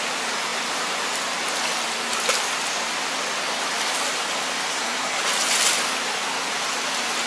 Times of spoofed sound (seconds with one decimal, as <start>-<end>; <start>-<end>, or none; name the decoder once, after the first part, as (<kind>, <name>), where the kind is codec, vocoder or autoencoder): 4.7-5.2 (codec, SNAC)